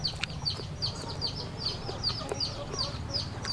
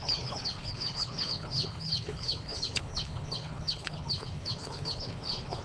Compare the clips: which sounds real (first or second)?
first